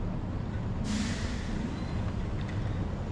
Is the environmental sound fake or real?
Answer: real